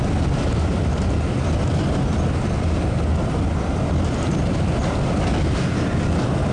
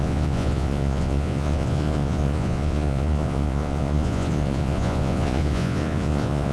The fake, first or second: second